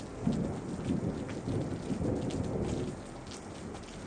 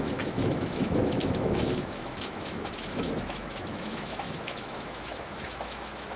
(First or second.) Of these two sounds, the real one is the first